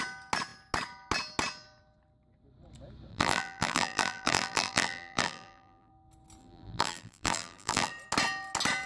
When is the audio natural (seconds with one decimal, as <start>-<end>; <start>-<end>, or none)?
0.0-3.1; 5.9-6.4; 7.9-8.9